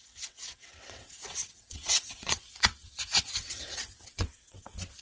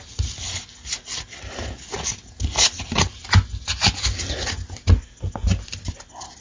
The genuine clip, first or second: second